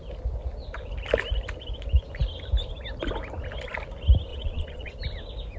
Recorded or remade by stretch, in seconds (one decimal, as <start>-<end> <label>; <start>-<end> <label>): 0.0-4.3 recorded; 4.3-4.9 remade; 4.9-5.6 recorded